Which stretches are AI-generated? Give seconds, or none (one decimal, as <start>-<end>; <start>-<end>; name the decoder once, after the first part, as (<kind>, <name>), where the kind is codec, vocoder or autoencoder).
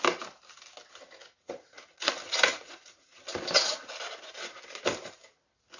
1.2-2.1 (vocoder, Vocos); 2.5-3.2